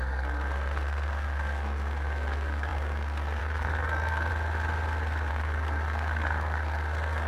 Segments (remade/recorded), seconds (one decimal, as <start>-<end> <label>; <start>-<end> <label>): 0.0-4.3 remade; 4.3-5.3 recorded; 5.3-7.3 remade